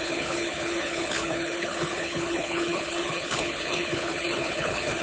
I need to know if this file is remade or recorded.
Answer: remade